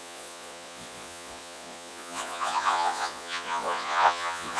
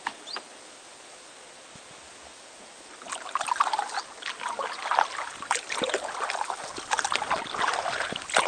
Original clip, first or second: second